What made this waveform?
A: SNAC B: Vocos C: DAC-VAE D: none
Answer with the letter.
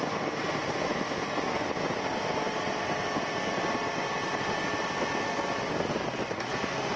D